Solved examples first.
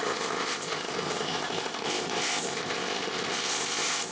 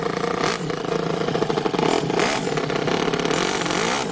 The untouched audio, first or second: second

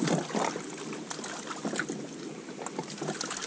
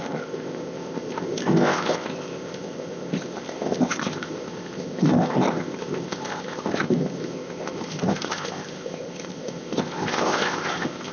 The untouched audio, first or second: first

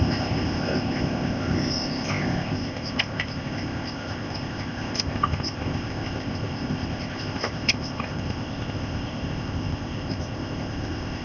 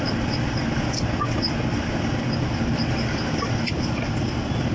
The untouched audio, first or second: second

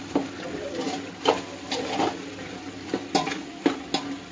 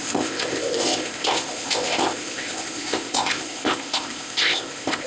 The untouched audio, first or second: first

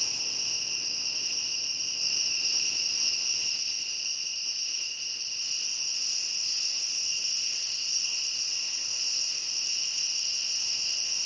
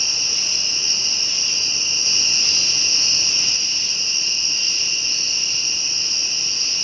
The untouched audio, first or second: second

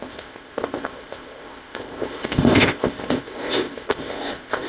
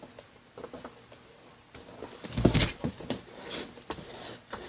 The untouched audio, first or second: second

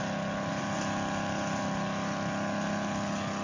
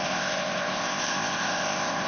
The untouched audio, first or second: first